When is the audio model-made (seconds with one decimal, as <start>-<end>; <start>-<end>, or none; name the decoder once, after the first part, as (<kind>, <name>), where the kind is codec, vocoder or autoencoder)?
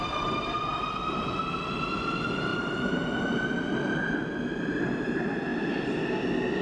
2.5-4.6 (vocoder, BigVGAN v2); 5.5-6.0